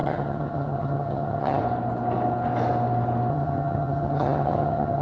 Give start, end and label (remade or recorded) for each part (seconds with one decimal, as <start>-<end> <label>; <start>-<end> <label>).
0.0-1.6 remade; 1.6-3.3 recorded; 3.3-5.0 remade